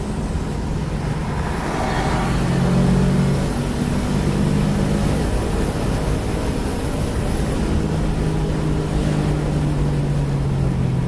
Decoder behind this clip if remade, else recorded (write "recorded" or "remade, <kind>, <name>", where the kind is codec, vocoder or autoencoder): recorded